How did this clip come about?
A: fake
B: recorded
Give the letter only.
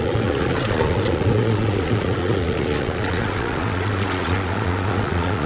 A